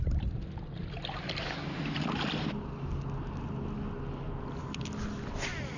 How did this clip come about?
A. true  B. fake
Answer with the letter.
A